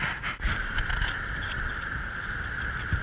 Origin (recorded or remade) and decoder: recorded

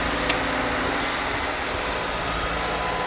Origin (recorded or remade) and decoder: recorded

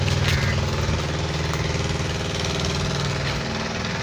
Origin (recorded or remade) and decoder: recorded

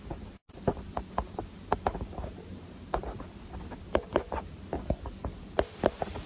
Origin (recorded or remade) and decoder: recorded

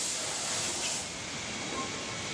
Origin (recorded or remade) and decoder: recorded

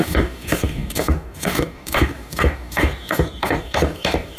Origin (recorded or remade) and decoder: remade, codec, DAC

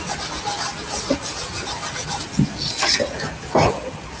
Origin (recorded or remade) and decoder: recorded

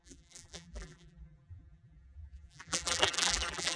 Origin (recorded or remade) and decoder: remade, vocoder, BigVGAN v2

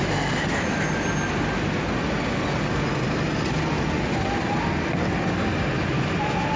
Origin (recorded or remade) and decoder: recorded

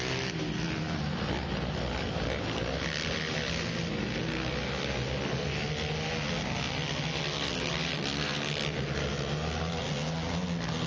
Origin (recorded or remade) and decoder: recorded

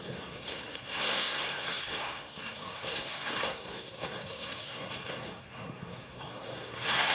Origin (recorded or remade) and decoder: remade, codec, SNAC